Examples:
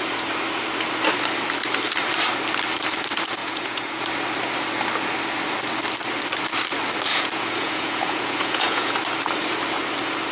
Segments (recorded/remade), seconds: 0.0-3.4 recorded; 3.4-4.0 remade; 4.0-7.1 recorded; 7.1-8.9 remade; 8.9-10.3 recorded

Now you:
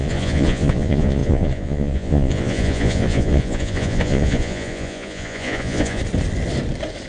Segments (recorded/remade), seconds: 0.0-6.0 remade; 6.0-7.1 recorded

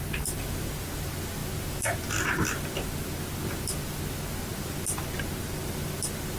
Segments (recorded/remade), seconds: 0.0-6.4 recorded

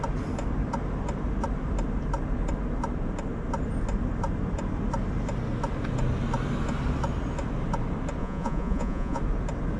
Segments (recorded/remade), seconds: 0.0-8.2 recorded; 8.2-9.2 remade; 9.2-9.8 recorded

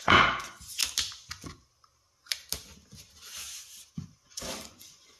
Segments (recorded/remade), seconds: 0.0-0.8 remade; 0.8-3.9 recorded; 3.9-5.2 remade

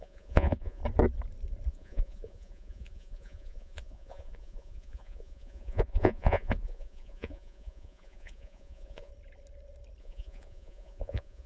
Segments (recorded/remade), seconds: 0.0-0.8 remade; 0.8-1.7 recorded; 1.7-9.1 remade; 9.1-10.0 recorded; 10.0-11.5 remade